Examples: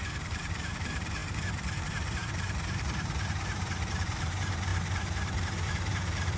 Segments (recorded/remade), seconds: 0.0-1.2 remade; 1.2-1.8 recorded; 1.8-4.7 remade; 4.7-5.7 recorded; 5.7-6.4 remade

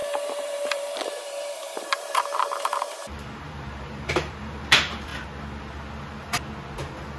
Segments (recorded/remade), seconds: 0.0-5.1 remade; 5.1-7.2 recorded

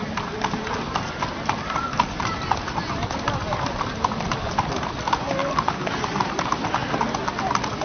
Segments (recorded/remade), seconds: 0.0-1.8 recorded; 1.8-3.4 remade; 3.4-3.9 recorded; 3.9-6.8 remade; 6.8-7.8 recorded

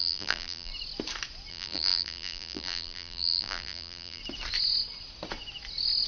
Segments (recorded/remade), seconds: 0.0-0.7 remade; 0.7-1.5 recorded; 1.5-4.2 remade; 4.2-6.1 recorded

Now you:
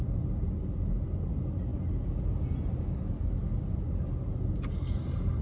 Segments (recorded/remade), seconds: 0.0-5.4 recorded

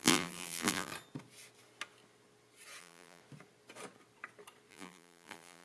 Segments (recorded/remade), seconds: 0.0-0.9 remade; 0.9-2.8 recorded; 2.8-3.2 remade; 3.2-4.7 recorded; 4.7-5.6 remade

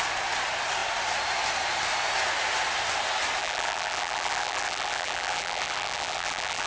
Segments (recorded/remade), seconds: 0.0-3.4 recorded; 3.4-6.7 remade

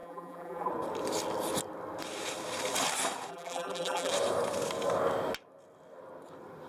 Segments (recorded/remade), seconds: 0.0-0.7 remade; 0.7-3.3 recorded; 3.3-4.1 remade; 4.1-6.7 recorded